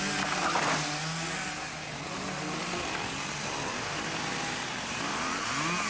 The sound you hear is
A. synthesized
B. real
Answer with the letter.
B